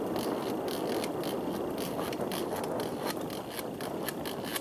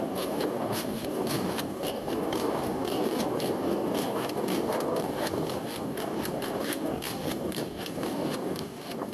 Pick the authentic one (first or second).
first